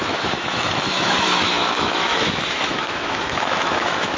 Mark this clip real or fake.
fake